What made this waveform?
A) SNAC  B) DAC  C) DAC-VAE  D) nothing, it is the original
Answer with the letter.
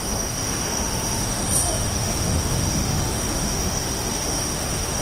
C